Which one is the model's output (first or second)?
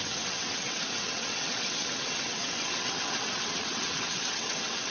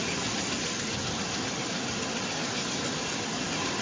first